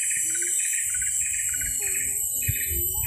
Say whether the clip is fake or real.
real